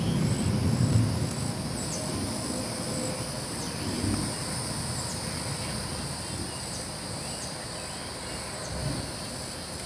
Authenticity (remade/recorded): recorded